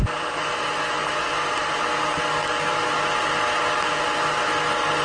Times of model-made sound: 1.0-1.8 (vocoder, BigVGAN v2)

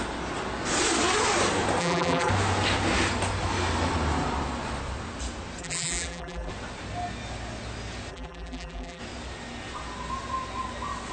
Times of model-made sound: 1.8-2.3 (vocoder, BigVGAN v2); 5.6-6.5; 8.1-9.0

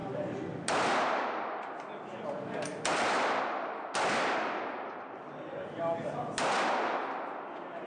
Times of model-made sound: none

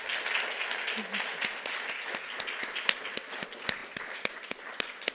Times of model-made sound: none

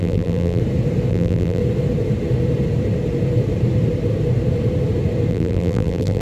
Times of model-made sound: 0.0-0.6 (vocoder, BigVGAN v2); 1.1-1.6; 5.3-6.2